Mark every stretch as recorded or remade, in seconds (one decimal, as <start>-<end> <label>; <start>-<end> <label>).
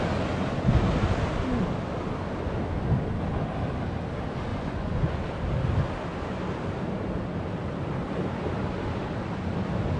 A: 0.0-4.5 recorded; 4.5-5.2 remade; 5.2-10.0 recorded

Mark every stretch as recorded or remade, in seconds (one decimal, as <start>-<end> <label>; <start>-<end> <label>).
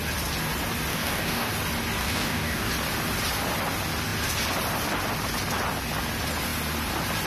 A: 0.0-0.9 recorded; 0.9-1.5 remade; 1.5-2.0 recorded; 2.0-2.7 remade; 2.7-7.3 recorded